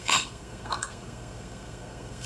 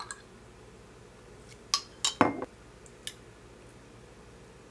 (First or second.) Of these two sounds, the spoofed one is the first